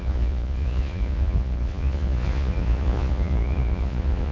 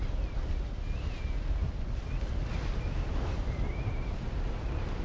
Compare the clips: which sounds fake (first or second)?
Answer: first